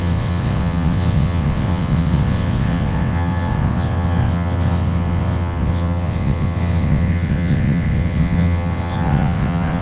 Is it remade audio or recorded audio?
remade